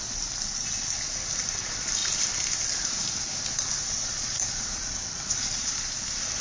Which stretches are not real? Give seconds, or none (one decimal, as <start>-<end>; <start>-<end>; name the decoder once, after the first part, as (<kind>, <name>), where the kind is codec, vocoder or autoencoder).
2.0-5.8 (vocoder, BigVGAN v2)